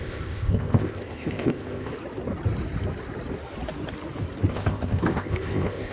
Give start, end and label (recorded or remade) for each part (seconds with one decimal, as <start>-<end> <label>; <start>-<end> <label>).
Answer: 0.0-1.9 remade; 1.9-4.5 recorded; 4.5-5.9 remade